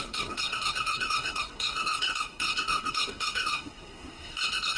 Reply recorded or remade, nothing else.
remade